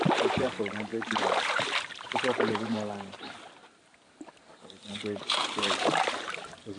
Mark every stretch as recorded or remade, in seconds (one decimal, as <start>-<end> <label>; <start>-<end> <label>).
0.0-6.8 remade